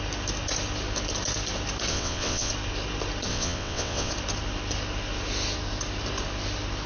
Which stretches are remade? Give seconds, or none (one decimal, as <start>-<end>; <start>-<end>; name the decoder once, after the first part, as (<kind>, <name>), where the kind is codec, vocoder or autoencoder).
1.9-2.5 (vocoder, WaveNeXt); 3.3-4.1